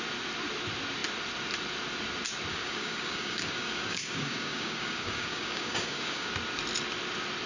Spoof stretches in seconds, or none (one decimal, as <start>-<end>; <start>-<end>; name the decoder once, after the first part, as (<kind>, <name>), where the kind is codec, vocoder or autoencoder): 2.5-6.3 (codec, DAC)